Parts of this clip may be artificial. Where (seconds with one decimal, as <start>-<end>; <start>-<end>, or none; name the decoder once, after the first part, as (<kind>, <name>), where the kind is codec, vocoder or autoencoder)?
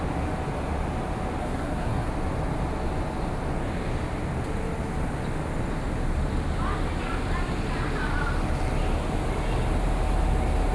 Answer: 1.4-2.1 (codec, SNAC)